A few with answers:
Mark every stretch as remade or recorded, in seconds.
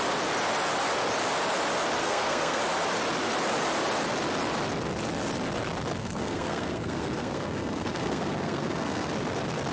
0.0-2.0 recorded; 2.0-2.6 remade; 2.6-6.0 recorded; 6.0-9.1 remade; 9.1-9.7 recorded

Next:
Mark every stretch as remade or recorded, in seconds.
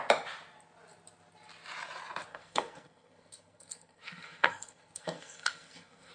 0.0-2.3 recorded; 2.3-6.1 remade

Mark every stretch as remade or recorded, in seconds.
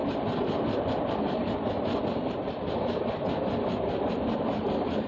0.0-5.1 recorded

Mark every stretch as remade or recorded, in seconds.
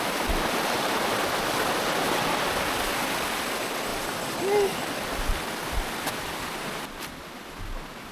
0.0-8.1 recorded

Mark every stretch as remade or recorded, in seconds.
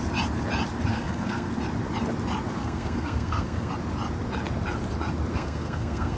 0.0-0.9 recorded; 0.9-1.5 remade; 1.5-2.6 recorded; 2.6-3.7 remade; 3.7-5.3 recorded; 5.3-6.2 remade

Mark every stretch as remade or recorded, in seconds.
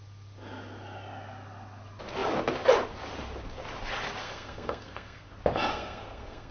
0.0-4.2 recorded; 4.2-5.3 remade; 5.3-5.7 recorded; 5.7-6.5 remade